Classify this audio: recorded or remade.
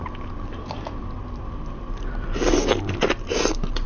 recorded